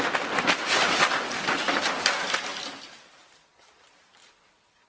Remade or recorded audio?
recorded